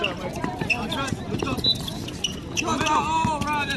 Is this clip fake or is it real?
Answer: real